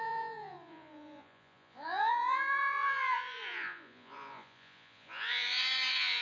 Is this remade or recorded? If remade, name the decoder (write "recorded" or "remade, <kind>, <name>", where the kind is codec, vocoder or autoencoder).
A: remade, vocoder, Vocos